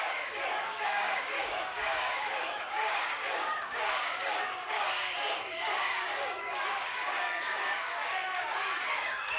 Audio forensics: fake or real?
fake